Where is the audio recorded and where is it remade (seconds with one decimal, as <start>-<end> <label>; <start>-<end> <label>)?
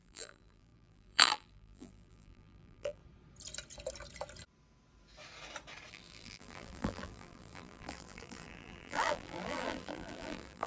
0.0-3.0 remade; 3.0-5.9 recorded; 5.9-10.7 remade